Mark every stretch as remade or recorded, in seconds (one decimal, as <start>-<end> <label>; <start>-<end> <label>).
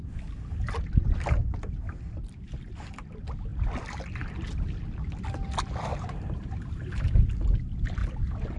0.0-5.9 recorded; 5.9-6.9 remade; 6.9-8.6 recorded